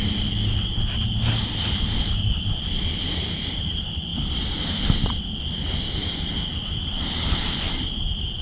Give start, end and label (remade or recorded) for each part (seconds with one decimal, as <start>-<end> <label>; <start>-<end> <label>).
0.0-8.4 recorded